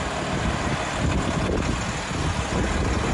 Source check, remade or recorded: recorded